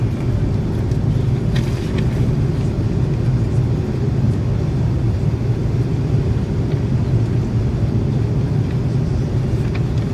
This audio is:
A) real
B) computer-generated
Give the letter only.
A